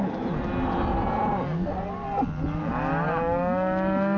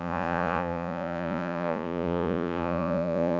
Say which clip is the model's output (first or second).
second